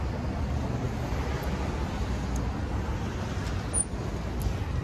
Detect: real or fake real